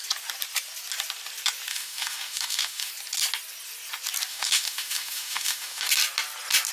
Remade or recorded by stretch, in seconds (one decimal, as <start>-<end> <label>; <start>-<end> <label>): 0.0-1.7 recorded; 1.7-2.9 remade; 2.9-4.3 recorded; 4.3-5.9 remade; 5.9-6.7 recorded